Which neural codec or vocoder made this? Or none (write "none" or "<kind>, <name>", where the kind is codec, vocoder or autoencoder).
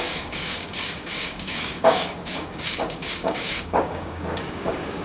codec, DAC